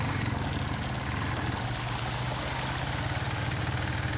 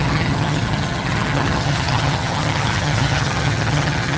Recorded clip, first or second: first